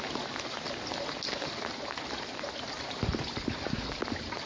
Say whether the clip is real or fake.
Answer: real